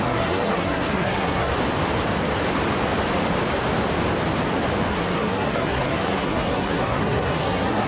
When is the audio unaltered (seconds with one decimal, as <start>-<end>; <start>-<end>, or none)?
1.5-4.9